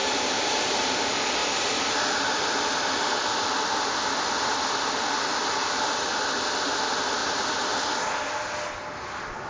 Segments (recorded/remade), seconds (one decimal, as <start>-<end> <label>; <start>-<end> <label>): 0.0-0.9 remade; 0.9-1.4 recorded; 1.4-2.7 remade; 2.7-5.3 recorded; 5.3-6.0 remade; 6.0-7.2 recorded; 7.2-7.9 remade; 7.9-9.5 recorded